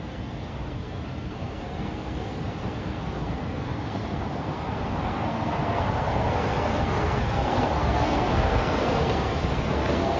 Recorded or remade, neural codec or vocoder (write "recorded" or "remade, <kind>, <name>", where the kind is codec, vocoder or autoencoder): remade, codec, SNAC